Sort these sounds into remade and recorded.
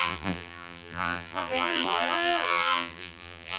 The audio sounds remade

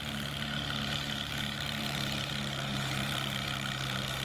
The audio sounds remade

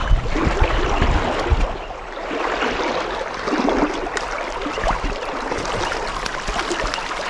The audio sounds recorded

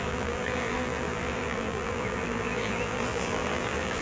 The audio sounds remade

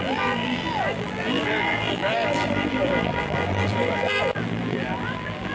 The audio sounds remade